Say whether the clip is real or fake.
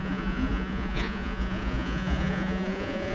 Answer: fake